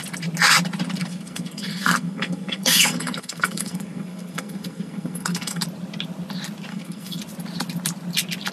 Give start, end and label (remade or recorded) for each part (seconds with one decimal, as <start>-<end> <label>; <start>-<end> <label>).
0.0-1.0 recorded; 1.0-5.6 remade; 5.6-6.7 recorded; 6.7-7.2 remade; 7.2-8.5 recorded